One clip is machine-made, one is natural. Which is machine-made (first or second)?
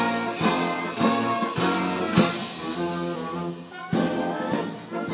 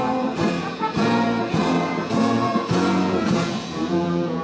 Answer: second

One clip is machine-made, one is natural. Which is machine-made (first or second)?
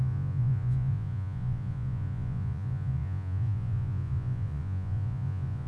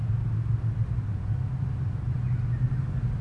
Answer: first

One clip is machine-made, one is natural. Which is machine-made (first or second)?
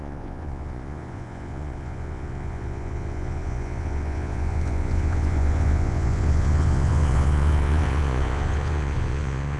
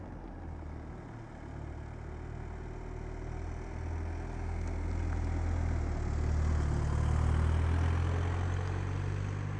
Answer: first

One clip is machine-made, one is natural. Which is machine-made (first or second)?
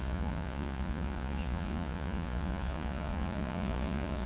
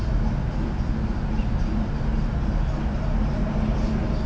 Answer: first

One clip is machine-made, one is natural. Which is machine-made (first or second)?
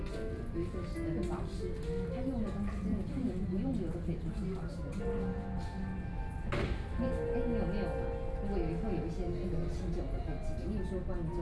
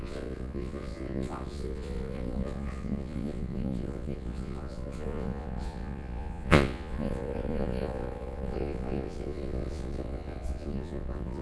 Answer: second